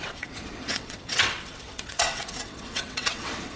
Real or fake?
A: fake